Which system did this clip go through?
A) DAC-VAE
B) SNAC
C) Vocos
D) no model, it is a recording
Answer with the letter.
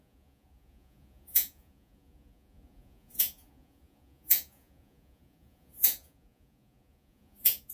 C